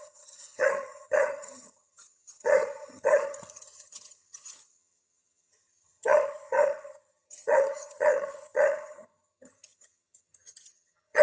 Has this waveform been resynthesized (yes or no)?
yes